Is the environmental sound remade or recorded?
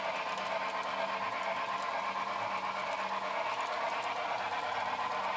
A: recorded